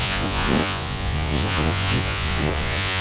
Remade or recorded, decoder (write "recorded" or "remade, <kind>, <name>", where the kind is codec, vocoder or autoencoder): remade, vocoder, Vocos